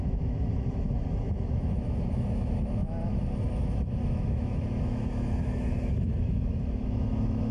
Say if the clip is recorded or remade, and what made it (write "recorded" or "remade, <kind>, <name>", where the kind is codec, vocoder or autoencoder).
remade, autoencoder, DAC-VAE